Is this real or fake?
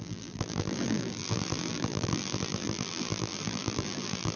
fake